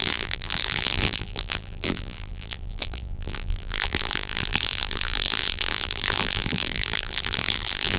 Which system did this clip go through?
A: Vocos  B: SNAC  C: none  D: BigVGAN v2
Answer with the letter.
D